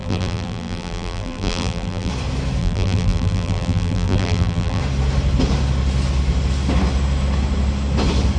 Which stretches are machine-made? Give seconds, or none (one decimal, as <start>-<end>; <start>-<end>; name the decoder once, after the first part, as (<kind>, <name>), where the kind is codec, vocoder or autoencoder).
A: 0.0-2.1 (vocoder, BigVGAN v2); 2.6-4.8